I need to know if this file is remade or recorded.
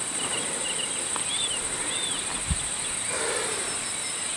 recorded